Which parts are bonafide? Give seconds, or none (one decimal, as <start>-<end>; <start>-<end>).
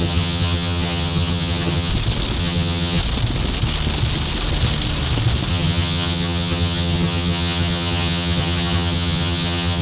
1.9-2.4; 3.0-5.5